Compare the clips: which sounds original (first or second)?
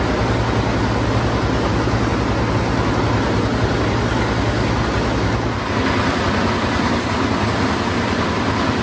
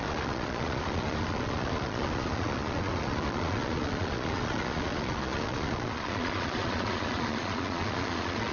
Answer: first